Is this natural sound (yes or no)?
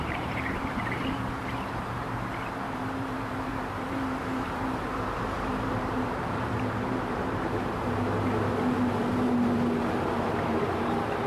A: no